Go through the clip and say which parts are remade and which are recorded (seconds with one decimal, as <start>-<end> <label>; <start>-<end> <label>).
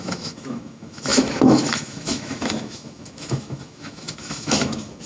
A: 0.0-5.1 remade